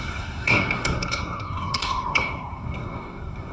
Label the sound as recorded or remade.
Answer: remade